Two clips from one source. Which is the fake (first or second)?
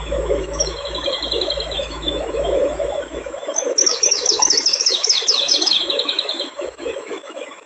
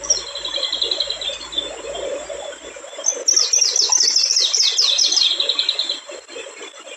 first